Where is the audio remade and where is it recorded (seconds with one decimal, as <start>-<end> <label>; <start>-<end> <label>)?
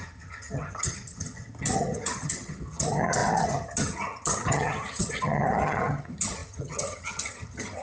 0.0-7.8 remade